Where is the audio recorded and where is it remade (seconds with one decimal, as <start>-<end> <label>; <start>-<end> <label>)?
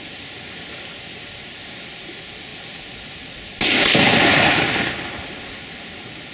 0.0-6.3 recorded